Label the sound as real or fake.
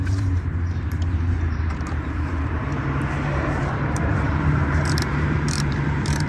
fake